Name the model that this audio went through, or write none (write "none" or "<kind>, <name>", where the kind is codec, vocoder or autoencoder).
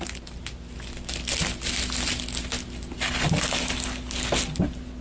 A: none